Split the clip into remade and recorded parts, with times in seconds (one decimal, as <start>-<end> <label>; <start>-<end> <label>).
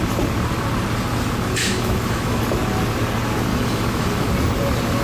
0.0-1.6 recorded; 1.6-2.4 remade; 2.4-3.5 recorded; 3.5-4.3 remade; 4.3-5.0 recorded